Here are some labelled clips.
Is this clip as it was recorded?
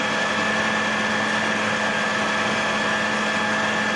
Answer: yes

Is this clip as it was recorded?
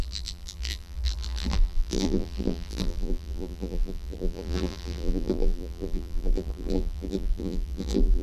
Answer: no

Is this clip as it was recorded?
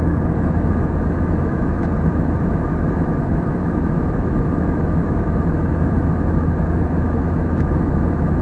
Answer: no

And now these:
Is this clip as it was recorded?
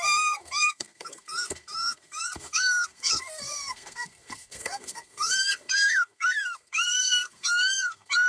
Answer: no